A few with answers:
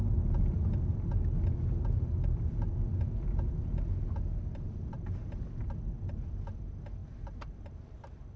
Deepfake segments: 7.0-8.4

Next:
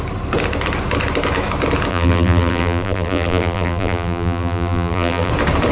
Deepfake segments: 1.9-5.3

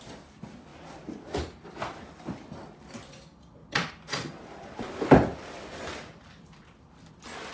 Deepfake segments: 0.7-2.3; 3.6-7.1

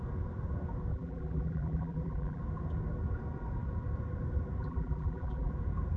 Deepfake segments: 0.9-2.4; 4.6-5.5

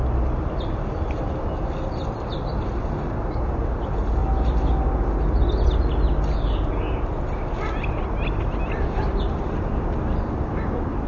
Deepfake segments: 0.0-4.2; 9.0-11.1

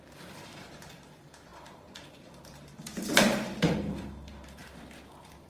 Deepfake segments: 0.0-5.5

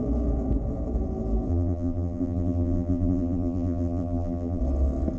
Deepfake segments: 1.5-4.6